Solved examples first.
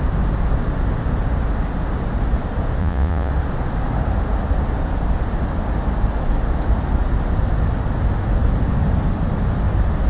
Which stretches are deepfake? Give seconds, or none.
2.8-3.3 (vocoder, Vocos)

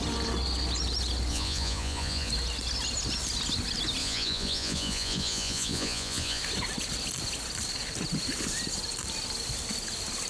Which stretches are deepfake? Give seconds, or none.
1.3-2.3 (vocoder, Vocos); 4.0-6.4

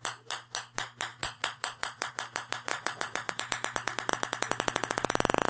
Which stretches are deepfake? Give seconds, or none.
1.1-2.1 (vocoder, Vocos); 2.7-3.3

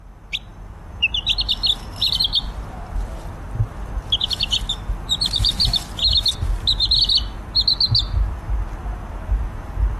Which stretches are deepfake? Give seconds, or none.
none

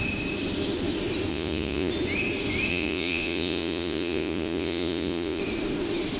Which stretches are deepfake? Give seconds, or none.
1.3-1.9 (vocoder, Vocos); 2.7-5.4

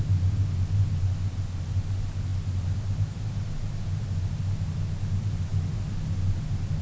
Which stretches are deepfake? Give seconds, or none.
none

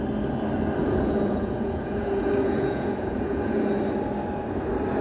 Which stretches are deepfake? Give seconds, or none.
0.8-3.8 (vocoder, Vocos)